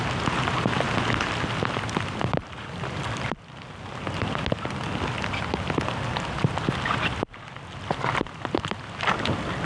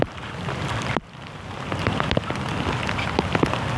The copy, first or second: second